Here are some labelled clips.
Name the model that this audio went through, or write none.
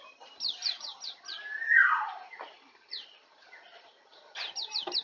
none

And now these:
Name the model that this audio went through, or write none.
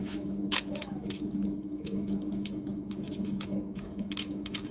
autoencoder, DAC-VAE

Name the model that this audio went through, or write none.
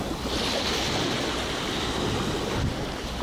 none